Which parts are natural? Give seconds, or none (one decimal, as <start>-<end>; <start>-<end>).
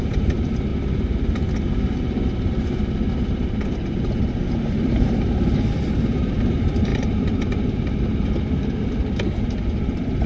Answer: 0.7-3.1